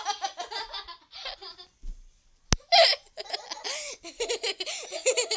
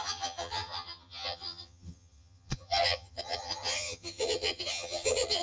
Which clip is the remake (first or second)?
second